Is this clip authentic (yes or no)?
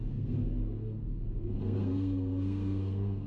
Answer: no